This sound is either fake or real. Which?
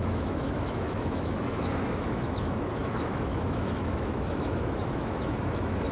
fake